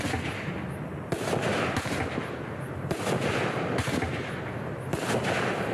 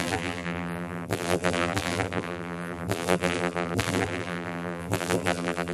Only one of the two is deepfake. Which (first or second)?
second